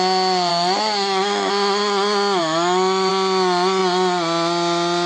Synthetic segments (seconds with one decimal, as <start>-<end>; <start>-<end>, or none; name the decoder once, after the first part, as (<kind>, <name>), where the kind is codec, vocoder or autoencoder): 0.5-1.5 (autoencoder, DAC-VAE); 2.4-3.1